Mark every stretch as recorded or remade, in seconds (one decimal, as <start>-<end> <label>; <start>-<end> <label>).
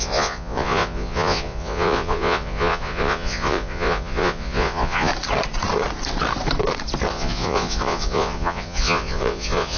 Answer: 0.0-5.1 remade; 5.1-7.1 recorded; 7.1-9.8 remade